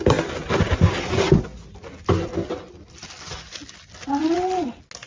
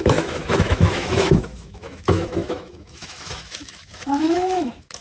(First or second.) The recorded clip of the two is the first